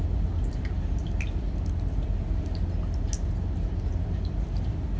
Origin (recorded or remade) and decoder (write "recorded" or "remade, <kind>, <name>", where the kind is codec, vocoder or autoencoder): recorded